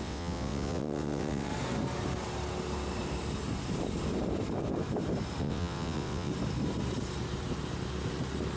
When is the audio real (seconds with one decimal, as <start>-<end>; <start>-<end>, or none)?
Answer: 1.5-5.4; 6.3-8.6